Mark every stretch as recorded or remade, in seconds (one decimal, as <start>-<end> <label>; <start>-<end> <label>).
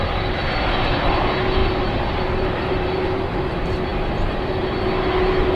0.0-1.6 recorded; 1.6-3.2 remade; 3.2-5.6 recorded